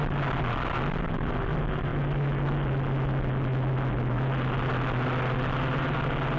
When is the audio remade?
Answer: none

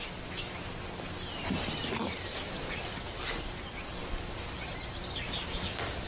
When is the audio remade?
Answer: 1.8-3.0 (vocoder, BigVGAN v2); 4.7-5.5

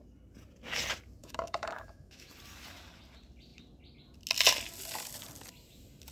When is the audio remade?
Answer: 1.2-2.3 (autoencoder, DAC-VAE)

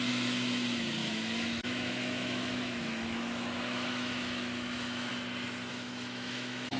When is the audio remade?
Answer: 1.0-5.1 (autoencoder, DAC-VAE); 5.7-6.8

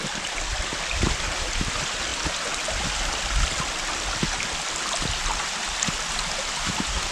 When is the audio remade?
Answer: 0.0-2.1 (vocoder, BigVGAN v2); 5.5-7.1